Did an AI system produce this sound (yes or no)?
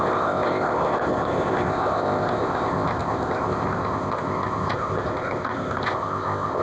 yes